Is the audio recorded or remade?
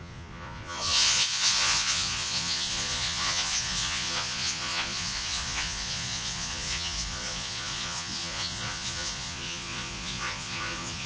remade